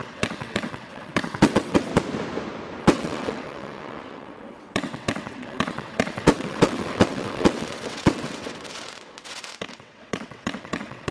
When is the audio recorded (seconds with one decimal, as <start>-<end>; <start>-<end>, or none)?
1.9-2.8